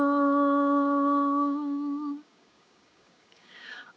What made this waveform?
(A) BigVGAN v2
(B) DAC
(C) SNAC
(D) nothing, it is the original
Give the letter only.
B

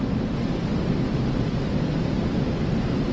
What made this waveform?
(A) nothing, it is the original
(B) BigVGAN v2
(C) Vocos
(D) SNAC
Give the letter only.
A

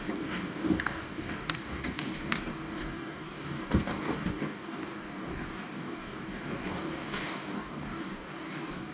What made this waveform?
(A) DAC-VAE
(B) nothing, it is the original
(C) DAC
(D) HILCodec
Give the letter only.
C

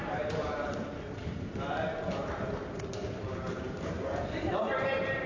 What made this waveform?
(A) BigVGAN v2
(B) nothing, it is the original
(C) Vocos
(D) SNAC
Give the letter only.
A